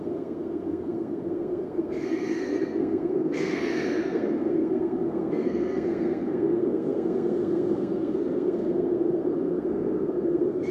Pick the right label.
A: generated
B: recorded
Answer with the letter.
A